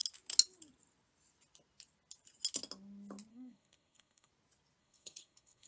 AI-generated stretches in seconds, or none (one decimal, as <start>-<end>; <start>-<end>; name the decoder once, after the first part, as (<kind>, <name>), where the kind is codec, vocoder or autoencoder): 3.3-4.3 (codec, SNAC); 4.8-5.7